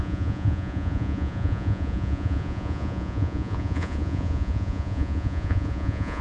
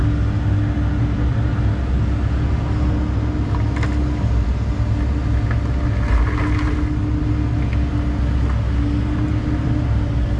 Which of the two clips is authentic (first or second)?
second